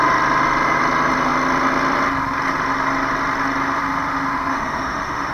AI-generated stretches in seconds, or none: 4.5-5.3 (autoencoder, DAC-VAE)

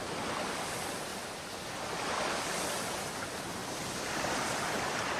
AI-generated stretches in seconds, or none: none

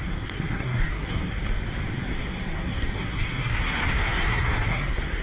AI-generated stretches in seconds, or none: 0.0-1.4 (codec, SNAC); 2.0-5.2

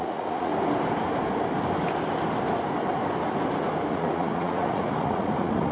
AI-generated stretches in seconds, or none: 0.0-0.5 (vocoder, Vocos); 3.9-5.7

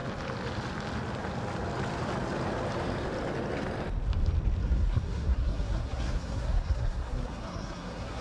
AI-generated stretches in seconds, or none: 4.6-8.2 (codec, SNAC)

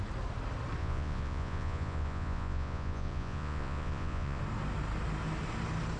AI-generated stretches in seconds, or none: 0.8-4.4 (vocoder, Vocos)

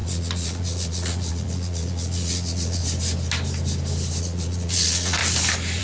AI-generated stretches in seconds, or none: 0.0-2.8 (vocoder, Vocos); 4.2-5.2

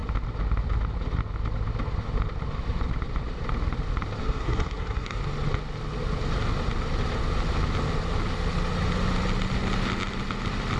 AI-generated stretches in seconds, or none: 4.2-5.2 (codec, SNAC)